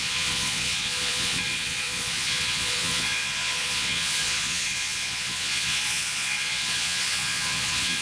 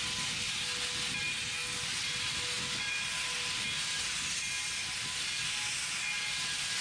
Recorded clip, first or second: second